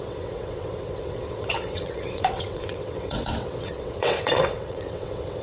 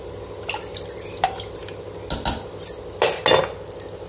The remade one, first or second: first